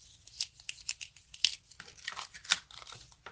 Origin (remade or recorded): recorded